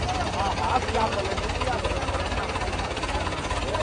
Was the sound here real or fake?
real